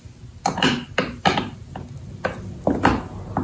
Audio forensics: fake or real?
real